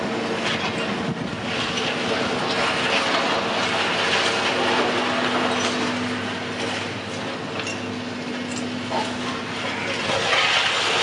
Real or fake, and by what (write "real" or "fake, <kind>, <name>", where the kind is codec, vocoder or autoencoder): real